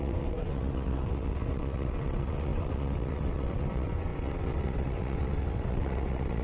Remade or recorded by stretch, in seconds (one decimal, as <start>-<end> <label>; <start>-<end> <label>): 0.0-6.4 remade